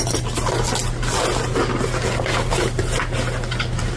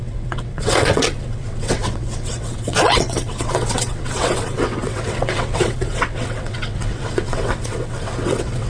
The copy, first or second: second